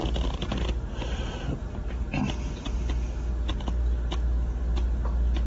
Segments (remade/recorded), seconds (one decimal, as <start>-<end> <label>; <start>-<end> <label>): 0.0-5.5 recorded